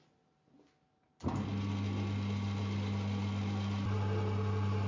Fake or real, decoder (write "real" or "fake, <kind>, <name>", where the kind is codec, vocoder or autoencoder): real